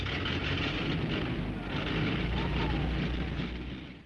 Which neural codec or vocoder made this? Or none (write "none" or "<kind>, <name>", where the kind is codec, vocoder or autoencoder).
none